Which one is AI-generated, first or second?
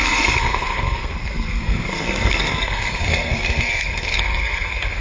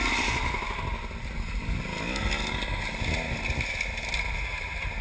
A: first